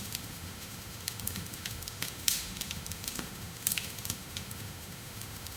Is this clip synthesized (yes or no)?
yes